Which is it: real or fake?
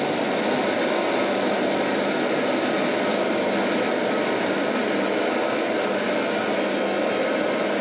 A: real